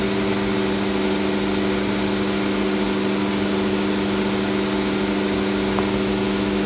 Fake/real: real